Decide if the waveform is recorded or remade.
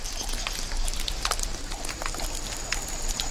recorded